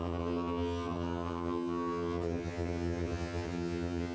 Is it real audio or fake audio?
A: fake